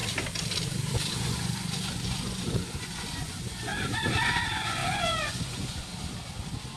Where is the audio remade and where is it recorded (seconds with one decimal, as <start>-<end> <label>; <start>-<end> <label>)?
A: 0.0-1.1 recorded; 1.1-3.7 remade; 3.7-4.3 recorded; 4.3-5.9 remade; 5.9-6.8 recorded